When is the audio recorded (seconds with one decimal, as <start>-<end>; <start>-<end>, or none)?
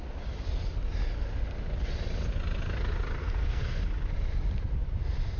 0.0-3.2; 3.8-5.4